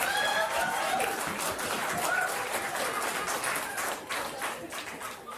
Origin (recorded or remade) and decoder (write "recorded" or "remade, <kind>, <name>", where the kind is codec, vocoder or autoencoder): remade, vocoder, BigVGAN v2